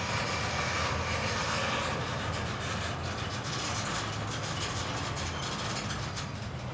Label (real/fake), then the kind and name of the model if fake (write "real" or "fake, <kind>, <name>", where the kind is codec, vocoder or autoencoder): real